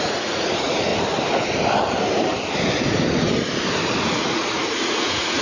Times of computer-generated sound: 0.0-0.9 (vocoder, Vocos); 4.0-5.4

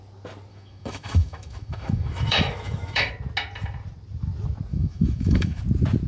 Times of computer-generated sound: 0.5-3.1 (autoencoder, DAC-VAE); 4.7-5.6

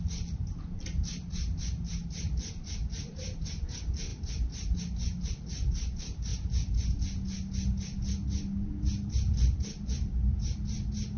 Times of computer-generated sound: none

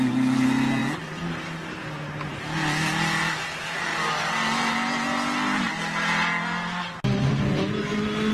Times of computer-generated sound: none

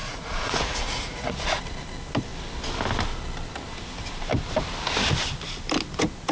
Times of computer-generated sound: 0.0-1.3 (vocoder, Vocos)

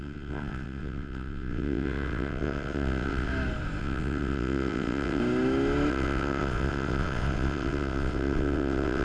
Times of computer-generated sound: 0.0-3.3 (vocoder, WaveNeXt); 3.8-5.2; 5.9-9.0

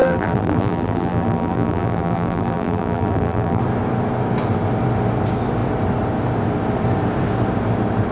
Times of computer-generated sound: 0.0-3.6 (vocoder, BigVGAN v2)

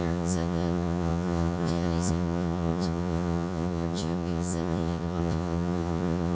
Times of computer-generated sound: 0.0-6.3 (vocoder, Vocos)